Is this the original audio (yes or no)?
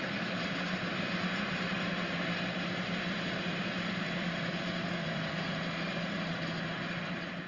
no